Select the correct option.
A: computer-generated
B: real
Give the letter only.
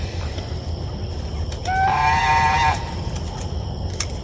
B